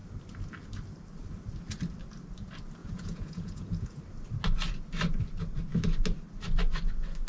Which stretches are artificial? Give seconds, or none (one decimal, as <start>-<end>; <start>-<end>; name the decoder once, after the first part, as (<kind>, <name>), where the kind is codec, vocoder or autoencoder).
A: 2.8-4.0 (vocoder, Vocos)